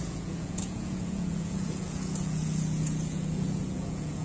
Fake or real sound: fake